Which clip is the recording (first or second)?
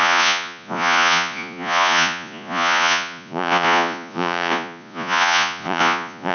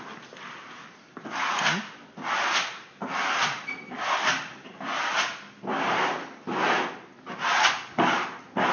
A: second